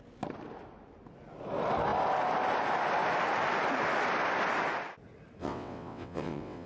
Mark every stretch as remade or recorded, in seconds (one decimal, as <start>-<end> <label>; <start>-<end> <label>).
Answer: 0.0-5.4 recorded; 5.4-6.7 remade